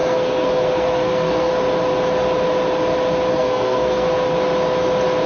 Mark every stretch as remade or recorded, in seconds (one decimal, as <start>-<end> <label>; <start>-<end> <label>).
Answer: 0.0-1.5 remade; 1.5-3.3 recorded; 3.3-4.1 remade; 4.1-5.3 recorded